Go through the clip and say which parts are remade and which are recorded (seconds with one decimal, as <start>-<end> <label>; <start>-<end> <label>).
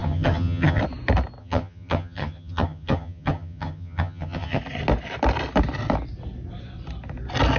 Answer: 0.0-0.8 remade; 0.8-1.4 recorded; 1.4-4.6 remade; 4.6-7.6 recorded